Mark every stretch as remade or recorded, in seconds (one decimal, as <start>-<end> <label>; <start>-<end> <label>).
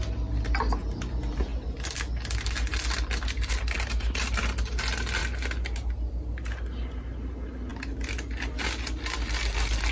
0.0-9.9 recorded